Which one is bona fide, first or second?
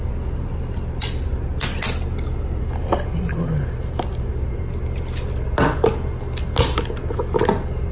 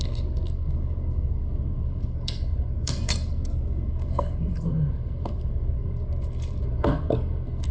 first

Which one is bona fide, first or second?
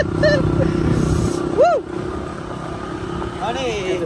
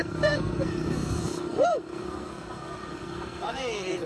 first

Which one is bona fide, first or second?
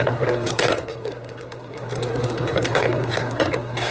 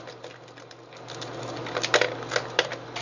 second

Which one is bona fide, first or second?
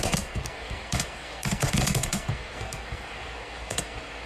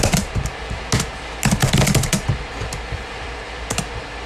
second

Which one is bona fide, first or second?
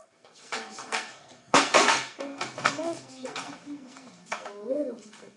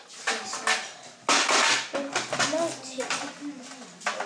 second